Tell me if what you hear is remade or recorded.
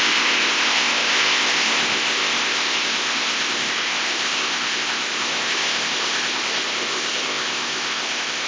remade